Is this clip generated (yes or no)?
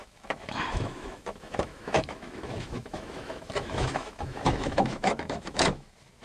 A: yes